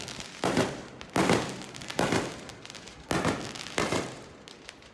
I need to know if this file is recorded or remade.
recorded